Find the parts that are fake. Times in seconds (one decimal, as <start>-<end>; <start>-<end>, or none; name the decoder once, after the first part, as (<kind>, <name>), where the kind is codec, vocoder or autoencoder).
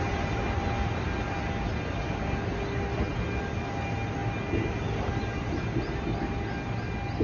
none